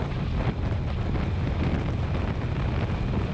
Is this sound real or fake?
real